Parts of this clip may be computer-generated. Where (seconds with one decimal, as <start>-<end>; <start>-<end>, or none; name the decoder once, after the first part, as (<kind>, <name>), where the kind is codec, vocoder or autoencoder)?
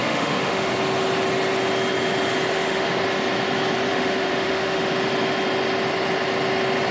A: 0.0-0.7 (autoencoder, DAC-VAE); 2.5-3.0; 3.9-4.9